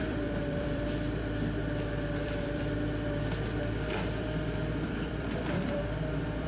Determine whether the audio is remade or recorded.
remade